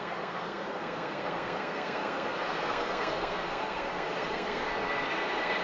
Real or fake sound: fake